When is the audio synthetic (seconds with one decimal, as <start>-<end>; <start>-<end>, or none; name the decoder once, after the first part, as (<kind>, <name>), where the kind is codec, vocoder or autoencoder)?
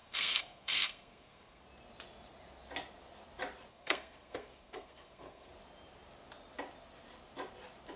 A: 0.0-1.6 (codec, SNAC); 3.7-5.5